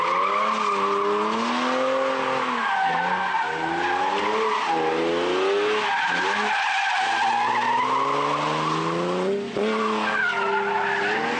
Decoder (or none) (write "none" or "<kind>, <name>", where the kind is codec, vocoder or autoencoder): none